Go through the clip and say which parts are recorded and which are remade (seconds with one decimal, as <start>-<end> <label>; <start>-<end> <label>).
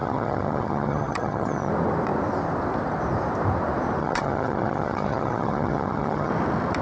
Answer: 0.0-1.7 remade; 1.7-4.0 recorded; 4.0-6.3 remade; 6.3-6.8 recorded